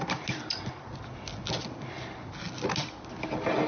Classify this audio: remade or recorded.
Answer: recorded